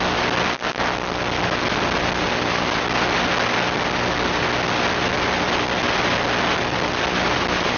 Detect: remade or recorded recorded